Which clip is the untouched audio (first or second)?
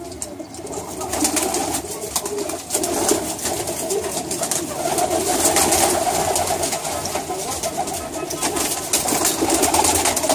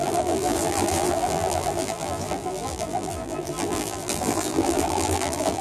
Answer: first